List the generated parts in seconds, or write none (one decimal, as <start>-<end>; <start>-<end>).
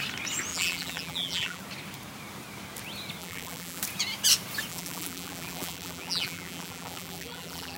0.5-1.6; 3.2-3.8; 4.7-7.8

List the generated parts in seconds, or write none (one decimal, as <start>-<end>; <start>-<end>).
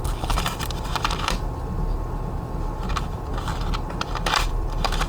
0.0-0.9; 2.9-3.3; 4.0-5.1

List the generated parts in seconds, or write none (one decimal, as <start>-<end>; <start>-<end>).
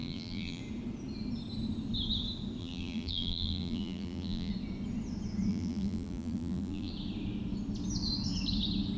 0.0-0.6; 2.6-4.5; 5.5-6.9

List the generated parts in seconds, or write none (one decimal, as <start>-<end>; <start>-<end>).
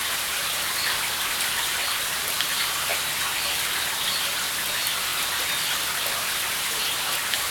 none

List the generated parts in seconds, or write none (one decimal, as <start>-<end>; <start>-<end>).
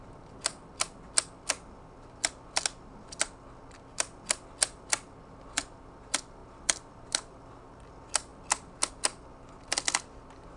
6.4-7.9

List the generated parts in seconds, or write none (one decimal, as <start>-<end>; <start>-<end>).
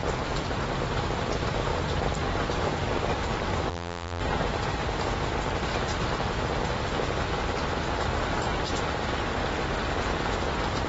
3.7-4.2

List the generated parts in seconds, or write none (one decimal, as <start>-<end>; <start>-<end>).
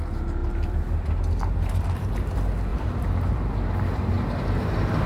0.4-2.1; 2.7-5.1